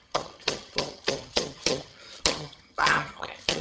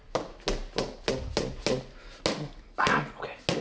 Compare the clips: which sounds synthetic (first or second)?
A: first